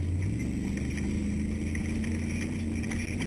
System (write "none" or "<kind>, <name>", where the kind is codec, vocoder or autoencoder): none